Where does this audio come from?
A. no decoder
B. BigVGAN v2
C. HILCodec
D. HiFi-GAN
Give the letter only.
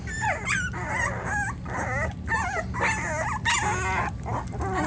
A